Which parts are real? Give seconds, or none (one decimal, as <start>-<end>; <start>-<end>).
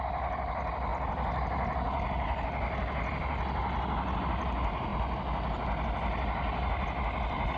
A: 0.0-7.6